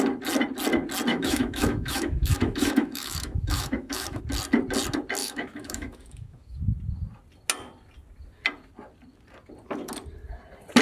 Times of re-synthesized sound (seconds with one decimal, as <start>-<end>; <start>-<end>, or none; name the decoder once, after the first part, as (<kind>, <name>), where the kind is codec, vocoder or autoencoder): 1.1-4.2 (autoencoder, DAC-VAE); 5.2-6.6